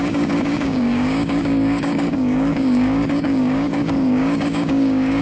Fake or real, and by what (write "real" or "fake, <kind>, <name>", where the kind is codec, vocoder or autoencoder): fake, codec, DAC